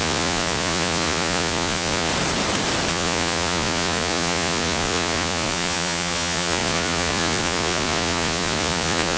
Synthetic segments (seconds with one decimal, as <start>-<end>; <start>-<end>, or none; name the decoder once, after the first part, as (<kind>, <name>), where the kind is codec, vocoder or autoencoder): 0.0-2.1 (vocoder, Vocos); 2.9-9.2